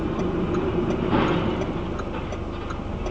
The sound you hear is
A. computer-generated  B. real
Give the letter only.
B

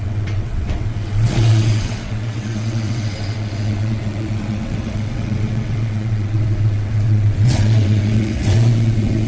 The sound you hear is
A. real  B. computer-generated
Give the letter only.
B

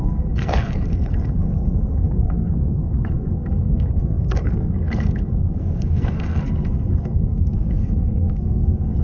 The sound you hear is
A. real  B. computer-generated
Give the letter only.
B